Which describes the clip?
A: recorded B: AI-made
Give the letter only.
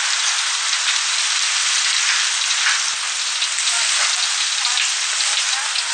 A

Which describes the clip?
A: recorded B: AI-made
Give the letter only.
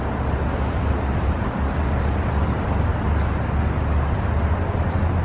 A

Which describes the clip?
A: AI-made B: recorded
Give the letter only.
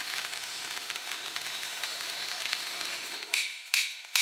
A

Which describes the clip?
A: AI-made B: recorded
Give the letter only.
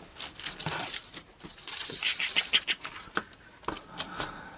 B